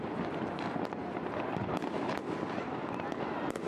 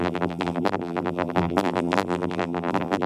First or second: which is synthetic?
second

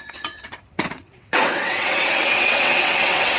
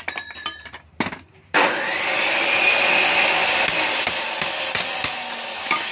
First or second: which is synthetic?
first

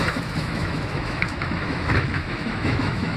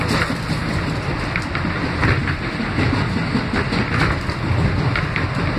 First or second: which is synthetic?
first